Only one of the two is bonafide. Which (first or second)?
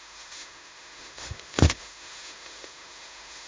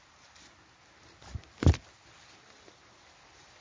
second